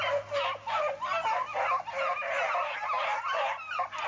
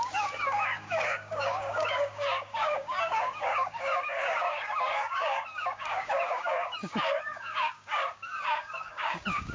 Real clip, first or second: first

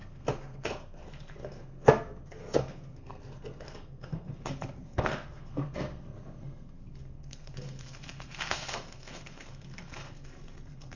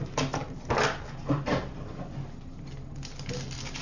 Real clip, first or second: second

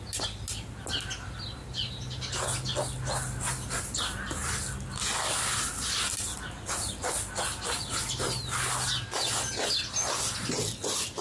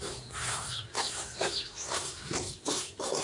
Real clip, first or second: first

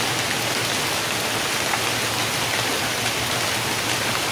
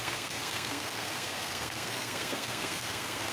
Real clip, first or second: first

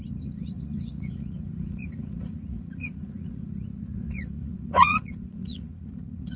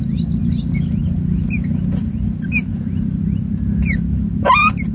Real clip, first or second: second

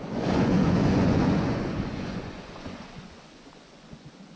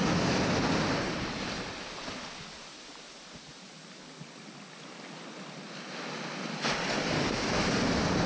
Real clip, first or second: second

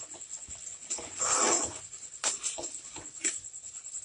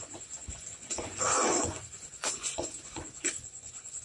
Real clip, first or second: first